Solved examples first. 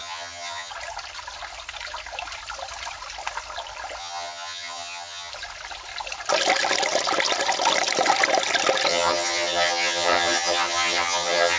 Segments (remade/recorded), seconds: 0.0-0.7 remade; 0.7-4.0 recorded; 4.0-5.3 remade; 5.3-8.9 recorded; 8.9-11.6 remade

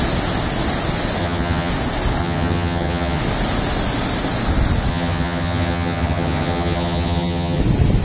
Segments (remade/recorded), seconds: 0.0-1.2 recorded; 1.2-1.7 remade; 1.7-2.2 recorded; 2.2-3.2 remade; 3.2-4.9 recorded; 4.9-7.6 remade; 7.6-8.0 recorded

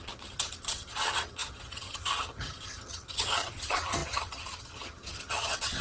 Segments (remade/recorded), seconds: 0.0-5.8 remade

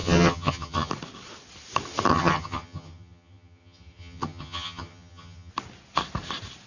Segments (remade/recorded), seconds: 0.0-0.9 remade; 0.9-2.1 recorded; 2.1-5.5 remade; 5.5-6.7 recorded

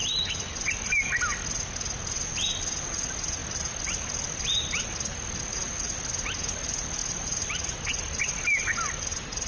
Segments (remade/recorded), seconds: 0.0-9.5 recorded

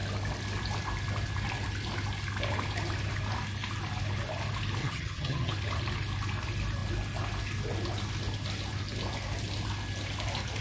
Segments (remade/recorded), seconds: 0.0-4.8 recorded; 4.8-5.5 remade; 5.5-10.6 recorded

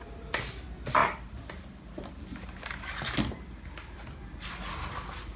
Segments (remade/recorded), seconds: 0.0-5.4 recorded